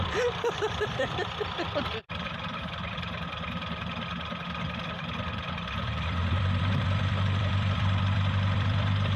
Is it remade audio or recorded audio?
remade